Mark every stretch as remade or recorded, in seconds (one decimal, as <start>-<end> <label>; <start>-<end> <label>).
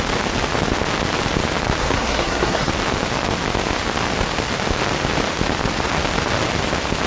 0.0-1.8 recorded; 1.8-2.7 remade; 2.7-7.1 recorded